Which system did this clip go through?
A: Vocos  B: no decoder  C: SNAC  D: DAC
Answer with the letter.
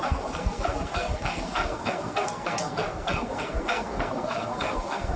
C